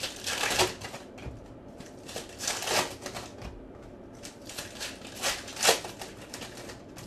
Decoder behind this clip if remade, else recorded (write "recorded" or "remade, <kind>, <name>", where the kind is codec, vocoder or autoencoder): recorded